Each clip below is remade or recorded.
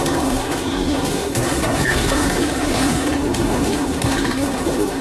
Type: remade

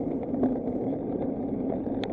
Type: recorded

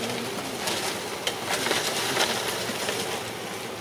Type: recorded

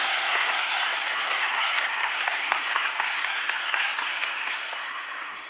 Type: remade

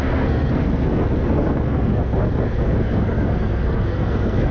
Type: remade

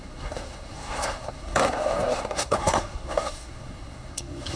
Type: remade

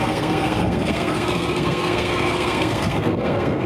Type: remade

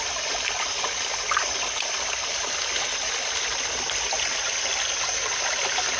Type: recorded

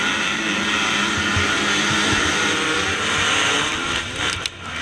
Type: recorded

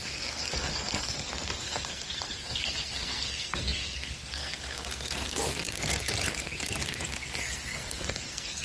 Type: remade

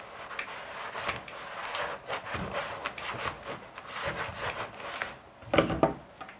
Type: recorded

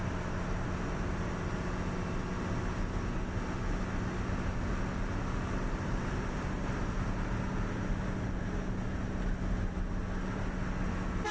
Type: recorded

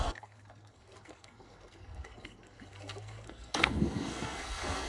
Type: remade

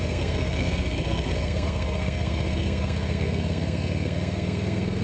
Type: remade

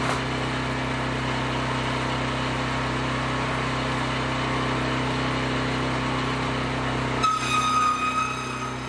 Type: recorded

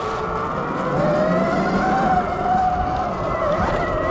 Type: recorded